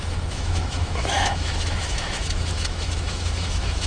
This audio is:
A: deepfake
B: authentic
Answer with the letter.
A